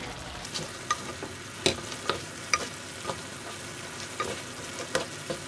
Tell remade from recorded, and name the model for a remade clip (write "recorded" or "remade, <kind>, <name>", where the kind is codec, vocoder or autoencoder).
recorded